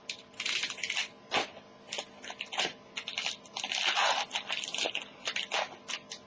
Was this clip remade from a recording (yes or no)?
no